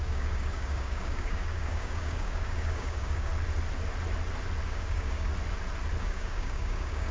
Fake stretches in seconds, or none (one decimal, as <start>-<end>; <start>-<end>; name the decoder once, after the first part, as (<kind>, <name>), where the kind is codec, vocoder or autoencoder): 0.0-3.3 (codec, DAC); 4.7-5.3; 6.0-7.1